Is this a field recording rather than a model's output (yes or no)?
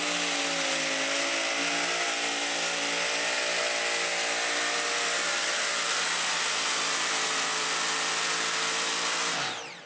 yes